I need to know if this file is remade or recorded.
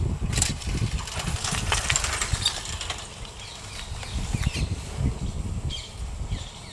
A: recorded